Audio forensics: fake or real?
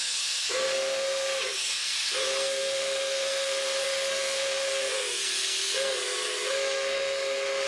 fake